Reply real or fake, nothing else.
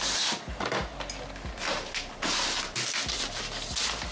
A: real